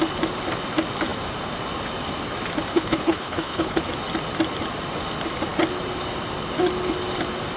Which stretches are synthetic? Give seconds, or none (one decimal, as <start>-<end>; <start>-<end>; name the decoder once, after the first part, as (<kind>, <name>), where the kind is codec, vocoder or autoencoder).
2.7-3.8 (codec, HILCodec)